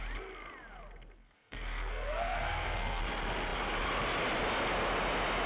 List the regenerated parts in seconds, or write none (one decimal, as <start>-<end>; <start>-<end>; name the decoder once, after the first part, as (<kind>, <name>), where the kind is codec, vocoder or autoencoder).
1.2-3.0 (codec, SNAC)